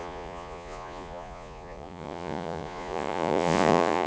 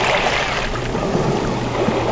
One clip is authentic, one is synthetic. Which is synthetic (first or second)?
first